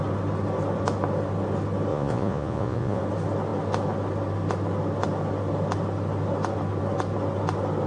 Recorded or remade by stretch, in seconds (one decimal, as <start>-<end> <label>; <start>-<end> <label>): 0.0-1.9 recorded; 1.9-3.0 remade; 3.0-7.9 recorded